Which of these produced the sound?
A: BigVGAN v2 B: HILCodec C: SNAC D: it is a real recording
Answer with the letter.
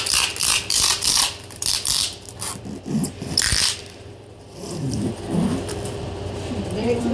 A